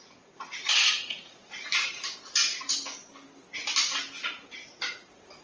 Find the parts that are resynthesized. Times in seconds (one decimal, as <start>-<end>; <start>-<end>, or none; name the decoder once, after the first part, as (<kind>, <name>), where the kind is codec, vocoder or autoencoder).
0.0-1.7 (vocoder, Vocos); 4.5-5.4